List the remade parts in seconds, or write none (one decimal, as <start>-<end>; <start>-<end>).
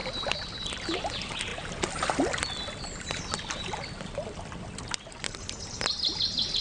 none